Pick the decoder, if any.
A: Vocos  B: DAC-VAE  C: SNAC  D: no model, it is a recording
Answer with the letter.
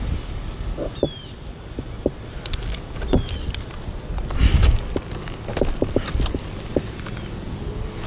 D